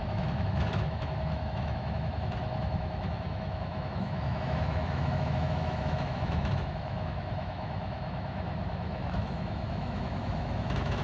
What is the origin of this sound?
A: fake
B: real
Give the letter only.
A